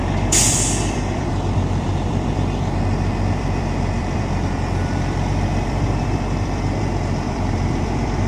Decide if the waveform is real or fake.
fake